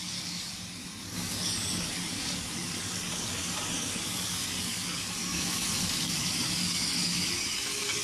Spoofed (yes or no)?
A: yes